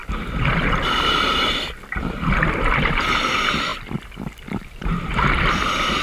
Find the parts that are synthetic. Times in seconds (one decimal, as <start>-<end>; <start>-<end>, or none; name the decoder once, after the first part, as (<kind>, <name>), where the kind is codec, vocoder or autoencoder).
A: 0.0-3.3 (vocoder, BigVGAN v2); 3.7-6.0